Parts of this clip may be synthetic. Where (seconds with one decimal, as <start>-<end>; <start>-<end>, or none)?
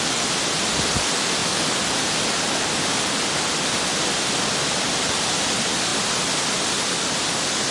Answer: none